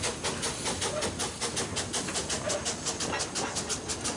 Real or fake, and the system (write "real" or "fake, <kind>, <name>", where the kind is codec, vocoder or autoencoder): real